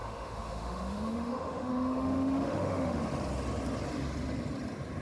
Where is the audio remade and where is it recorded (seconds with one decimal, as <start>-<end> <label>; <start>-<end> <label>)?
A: 0.0-3.0 remade; 3.0-5.0 recorded